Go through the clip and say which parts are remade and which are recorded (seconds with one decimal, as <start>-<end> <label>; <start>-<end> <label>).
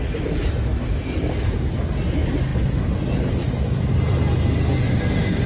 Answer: 0.0-5.5 recorded